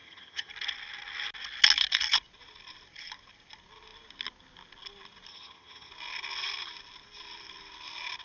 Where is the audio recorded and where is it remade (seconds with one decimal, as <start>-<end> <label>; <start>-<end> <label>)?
0.0-0.5 remade; 0.5-5.3 recorded; 5.3-5.9 remade; 5.9-8.2 recorded